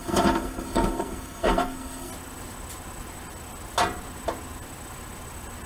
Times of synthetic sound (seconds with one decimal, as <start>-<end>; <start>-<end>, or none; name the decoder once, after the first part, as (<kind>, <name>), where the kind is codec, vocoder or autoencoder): 0.0-2.1 (codec, SNAC)